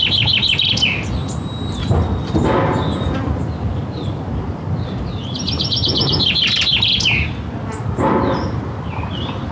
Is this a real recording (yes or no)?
yes